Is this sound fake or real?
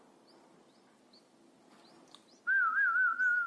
real